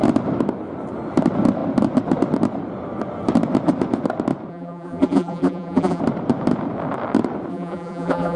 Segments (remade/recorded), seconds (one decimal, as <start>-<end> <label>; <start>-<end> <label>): 0.0-4.5 recorded; 4.5-6.0 remade; 6.0-7.5 recorded; 7.5-8.4 remade

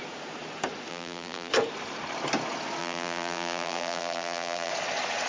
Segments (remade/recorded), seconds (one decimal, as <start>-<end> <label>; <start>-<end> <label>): 0.0-0.9 recorded; 0.9-1.5 remade; 1.5-2.8 recorded; 2.8-4.7 remade; 4.7-5.3 recorded

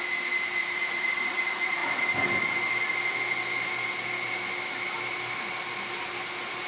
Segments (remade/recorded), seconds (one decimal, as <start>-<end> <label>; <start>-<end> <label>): 0.0-0.6 recorded; 0.6-1.3 remade; 1.3-6.7 recorded

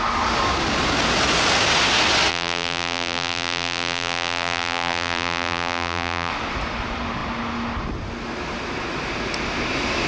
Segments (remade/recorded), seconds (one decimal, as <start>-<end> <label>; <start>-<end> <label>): 0.0-2.3 recorded; 2.3-6.3 remade; 6.3-10.1 recorded

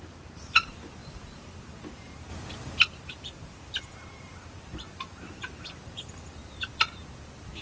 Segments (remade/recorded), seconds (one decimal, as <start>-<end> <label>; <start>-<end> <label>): 0.0-2.3 remade; 2.3-2.8 recorded; 2.8-6.4 remade; 6.4-7.6 recorded

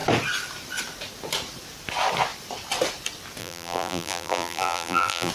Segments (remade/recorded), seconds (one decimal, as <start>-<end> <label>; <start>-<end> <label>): 0.0-3.4 recorded; 3.4-5.3 remade